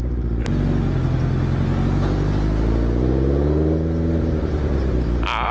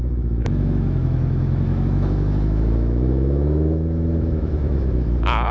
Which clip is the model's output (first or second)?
second